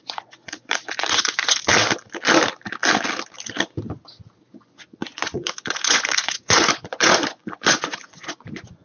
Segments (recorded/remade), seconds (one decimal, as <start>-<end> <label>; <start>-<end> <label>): 0.0-1.7 remade; 1.7-4.5 recorded; 4.5-8.8 remade